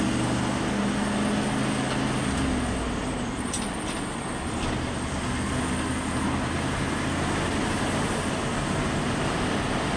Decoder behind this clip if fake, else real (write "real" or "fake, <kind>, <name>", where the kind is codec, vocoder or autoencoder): real